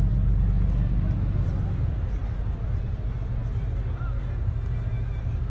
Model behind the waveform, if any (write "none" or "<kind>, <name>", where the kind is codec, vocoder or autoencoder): none